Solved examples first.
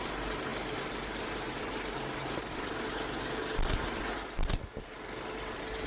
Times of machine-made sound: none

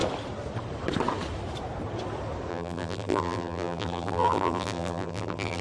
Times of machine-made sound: 2.5-5.6 (vocoder, BigVGAN v2)